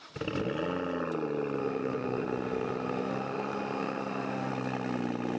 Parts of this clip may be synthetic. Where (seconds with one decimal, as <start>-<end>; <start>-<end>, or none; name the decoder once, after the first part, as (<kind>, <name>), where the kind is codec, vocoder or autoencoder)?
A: 1.6-4.5 (autoencoder, DAC-VAE)